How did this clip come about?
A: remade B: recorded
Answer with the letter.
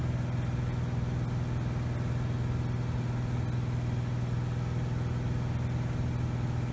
B